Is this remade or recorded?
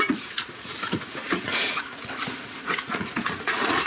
remade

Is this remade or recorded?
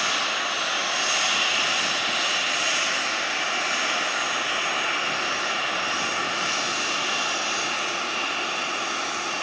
recorded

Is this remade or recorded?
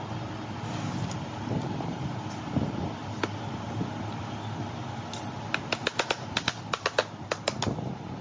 recorded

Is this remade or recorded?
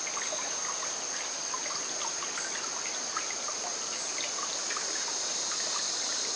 recorded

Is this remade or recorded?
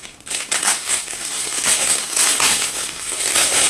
remade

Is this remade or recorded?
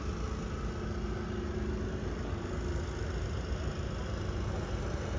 recorded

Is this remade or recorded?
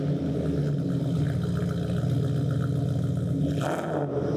recorded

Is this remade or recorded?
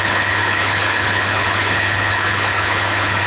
remade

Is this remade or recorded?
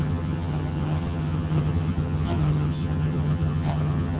remade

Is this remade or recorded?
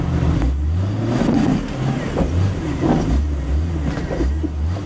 recorded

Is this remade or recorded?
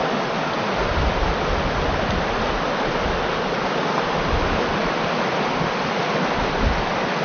recorded